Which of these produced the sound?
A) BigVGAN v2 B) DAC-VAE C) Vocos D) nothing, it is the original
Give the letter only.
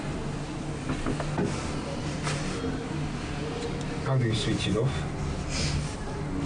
D